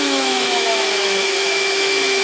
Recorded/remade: remade